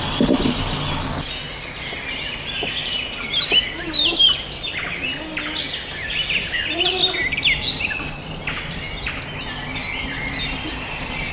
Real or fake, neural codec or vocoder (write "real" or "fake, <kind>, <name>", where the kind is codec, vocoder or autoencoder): real